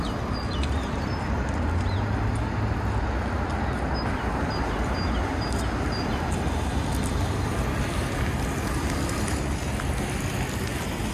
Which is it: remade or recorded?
recorded